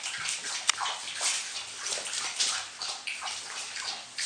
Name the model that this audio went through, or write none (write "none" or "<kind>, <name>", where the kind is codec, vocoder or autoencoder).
none